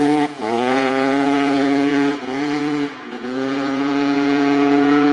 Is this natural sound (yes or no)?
no